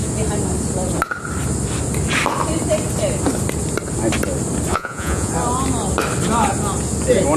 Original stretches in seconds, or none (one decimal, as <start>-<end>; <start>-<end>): 0.0-4.7; 5.3-7.4

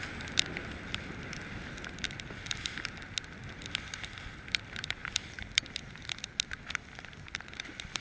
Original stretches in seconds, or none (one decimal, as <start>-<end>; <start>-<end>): 0.0-8.0

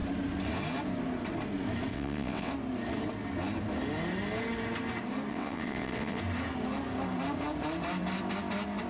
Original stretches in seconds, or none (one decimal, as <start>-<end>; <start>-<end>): 0.0-1.9; 2.5-5.3; 6.2-8.9

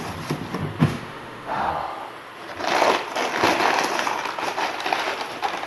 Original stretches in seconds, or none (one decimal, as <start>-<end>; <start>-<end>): 0.0-0.8; 1.7-5.7

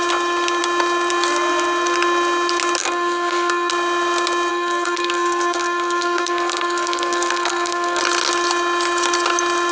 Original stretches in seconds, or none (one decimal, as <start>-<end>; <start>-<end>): 0.0-2.8; 3.7-4.5; 8.0-9.7